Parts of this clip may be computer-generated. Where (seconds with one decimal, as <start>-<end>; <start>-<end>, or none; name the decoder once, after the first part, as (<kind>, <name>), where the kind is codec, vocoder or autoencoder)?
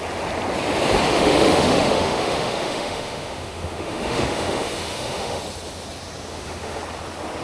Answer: 1.0-5.4 (autoencoder, DAC-VAE); 6.3-6.8